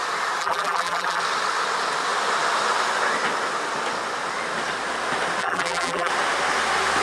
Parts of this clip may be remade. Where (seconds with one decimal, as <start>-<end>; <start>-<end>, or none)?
0.4-1.2; 5.4-6.1